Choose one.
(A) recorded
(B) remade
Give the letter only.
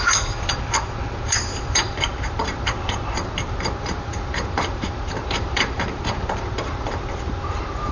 B